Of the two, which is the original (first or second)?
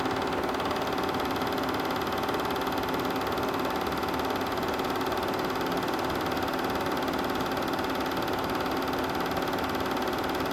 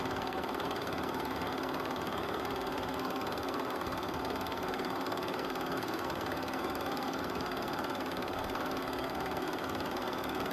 first